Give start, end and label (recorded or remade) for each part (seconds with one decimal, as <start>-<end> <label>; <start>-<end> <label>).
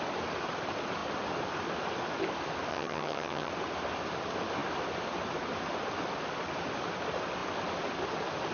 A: 0.0-2.7 recorded; 2.7-3.5 remade; 3.5-8.5 recorded